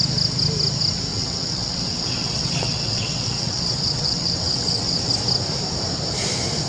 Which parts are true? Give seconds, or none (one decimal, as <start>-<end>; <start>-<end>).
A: 0.0-1.1; 5.1-6.7